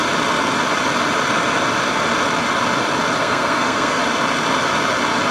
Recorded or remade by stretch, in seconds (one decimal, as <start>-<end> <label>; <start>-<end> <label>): 0.0-3.2 recorded; 3.2-4.0 remade; 4.0-5.3 recorded